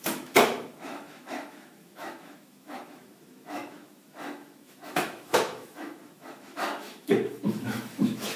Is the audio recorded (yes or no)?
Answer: no